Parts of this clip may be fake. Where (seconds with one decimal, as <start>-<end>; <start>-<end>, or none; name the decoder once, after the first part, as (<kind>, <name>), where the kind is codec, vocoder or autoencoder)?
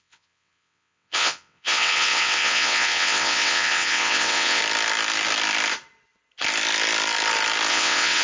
0.0-4.6 (vocoder, WaveNeXt); 7.7-8.2